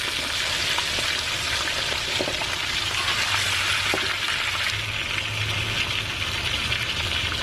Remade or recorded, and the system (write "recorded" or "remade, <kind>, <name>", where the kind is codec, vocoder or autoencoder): recorded